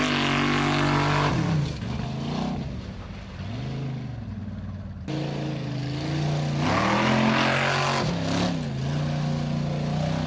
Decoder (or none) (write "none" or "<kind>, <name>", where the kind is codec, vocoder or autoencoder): none